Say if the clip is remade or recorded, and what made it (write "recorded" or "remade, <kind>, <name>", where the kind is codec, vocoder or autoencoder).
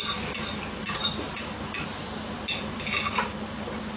recorded